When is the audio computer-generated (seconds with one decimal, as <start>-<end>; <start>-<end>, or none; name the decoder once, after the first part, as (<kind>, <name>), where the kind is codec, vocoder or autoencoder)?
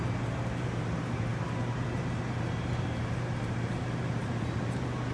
0.0-5.1 (vocoder, BigVGAN v2)